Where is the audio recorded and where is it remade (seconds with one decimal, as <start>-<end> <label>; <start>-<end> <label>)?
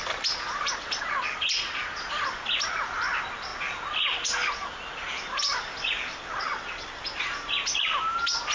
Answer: 0.0-6.1 recorded; 6.1-7.0 remade; 7.0-8.5 recorded